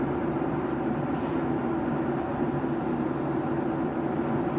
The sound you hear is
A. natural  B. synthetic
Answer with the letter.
A